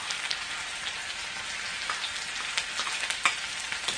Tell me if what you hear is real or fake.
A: real